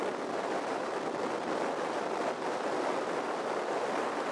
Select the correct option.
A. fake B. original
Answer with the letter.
B